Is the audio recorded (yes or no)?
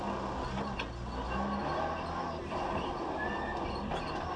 yes